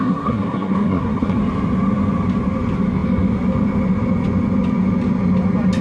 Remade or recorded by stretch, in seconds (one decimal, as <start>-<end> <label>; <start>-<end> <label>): 0.0-1.4 remade; 1.4-5.8 recorded